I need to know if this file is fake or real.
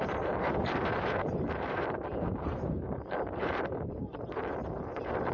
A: fake